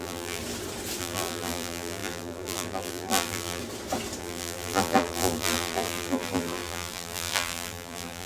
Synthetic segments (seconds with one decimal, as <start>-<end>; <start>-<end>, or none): 0.0-0.4; 1.0-3.6; 4.2-8.3